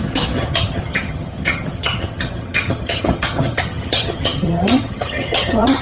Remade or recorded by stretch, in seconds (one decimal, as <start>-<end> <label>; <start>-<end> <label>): 0.0-5.8 remade